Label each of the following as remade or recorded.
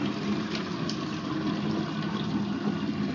recorded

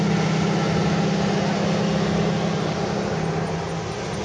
recorded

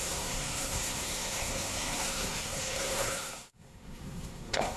remade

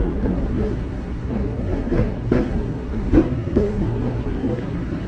remade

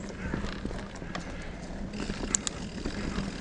recorded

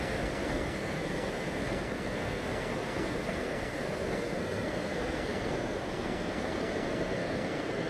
remade